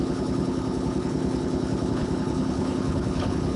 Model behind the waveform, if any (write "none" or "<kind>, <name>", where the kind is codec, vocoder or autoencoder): codec, HILCodec